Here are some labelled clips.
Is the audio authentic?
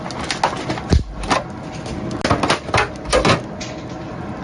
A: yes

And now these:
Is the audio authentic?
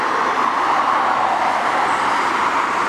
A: yes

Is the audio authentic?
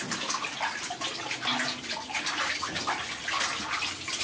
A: yes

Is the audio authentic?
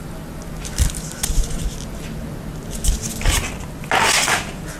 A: yes